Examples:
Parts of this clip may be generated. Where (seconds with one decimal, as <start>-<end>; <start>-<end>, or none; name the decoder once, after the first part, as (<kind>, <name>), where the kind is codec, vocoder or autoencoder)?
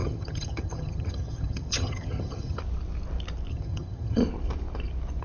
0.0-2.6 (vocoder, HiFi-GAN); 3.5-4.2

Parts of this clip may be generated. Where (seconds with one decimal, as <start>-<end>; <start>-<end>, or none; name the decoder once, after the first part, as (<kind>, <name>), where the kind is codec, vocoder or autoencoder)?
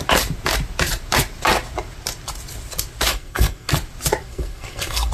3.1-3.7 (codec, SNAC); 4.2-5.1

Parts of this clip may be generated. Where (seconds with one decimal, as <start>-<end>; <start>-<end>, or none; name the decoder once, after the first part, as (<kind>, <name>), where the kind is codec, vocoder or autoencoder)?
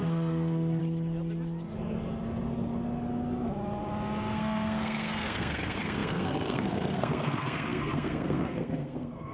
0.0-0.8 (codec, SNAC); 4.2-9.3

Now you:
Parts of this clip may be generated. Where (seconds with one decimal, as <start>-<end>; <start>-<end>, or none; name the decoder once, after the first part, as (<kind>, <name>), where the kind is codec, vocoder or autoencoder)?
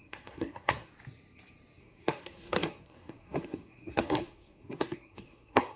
0.0-0.9 (codec, SNAC); 1.8-5.8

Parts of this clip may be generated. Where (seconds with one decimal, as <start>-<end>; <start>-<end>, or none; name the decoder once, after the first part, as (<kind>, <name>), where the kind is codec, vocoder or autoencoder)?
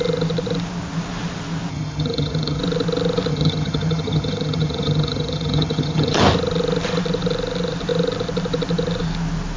1.7-2.6 (vocoder, HiFi-GAN); 3.3-6.2